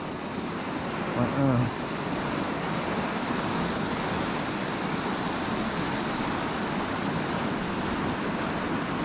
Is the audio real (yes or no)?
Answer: yes